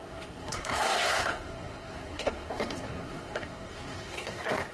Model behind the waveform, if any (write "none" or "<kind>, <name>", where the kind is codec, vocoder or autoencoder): codec, SNAC